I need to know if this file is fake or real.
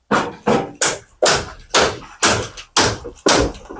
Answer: real